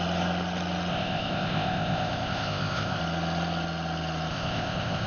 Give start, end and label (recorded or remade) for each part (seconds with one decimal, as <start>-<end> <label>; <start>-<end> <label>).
0.0-0.9 recorded; 0.9-3.0 remade; 3.0-4.3 recorded; 4.3-5.1 remade